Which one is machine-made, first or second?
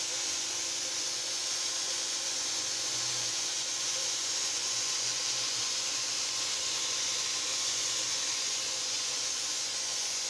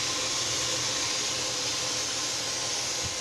first